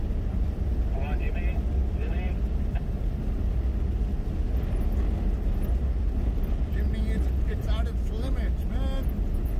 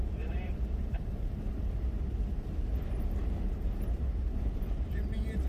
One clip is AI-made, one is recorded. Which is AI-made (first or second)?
second